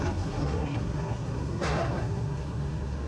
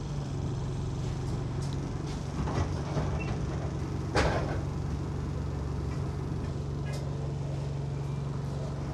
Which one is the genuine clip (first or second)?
second